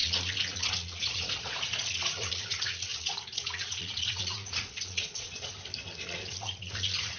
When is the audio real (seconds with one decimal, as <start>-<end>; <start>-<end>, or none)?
5.5-6.0